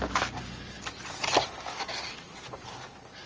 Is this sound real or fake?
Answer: real